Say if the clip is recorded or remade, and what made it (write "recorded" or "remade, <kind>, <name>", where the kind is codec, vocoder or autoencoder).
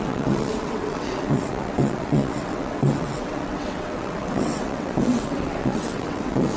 remade, vocoder, WaveNeXt